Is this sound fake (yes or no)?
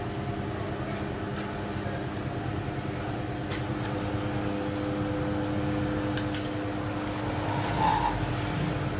no